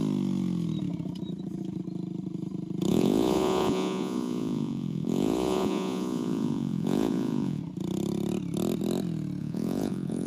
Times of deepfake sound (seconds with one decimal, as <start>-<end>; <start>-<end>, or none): 2.9-7.6; 9.4-10.3